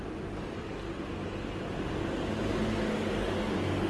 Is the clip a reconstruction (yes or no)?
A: no